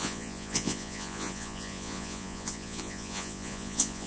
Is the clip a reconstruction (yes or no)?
yes